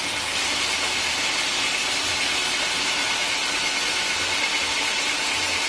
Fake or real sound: real